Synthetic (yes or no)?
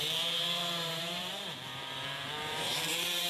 yes